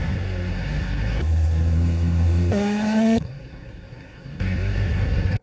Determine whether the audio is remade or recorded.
remade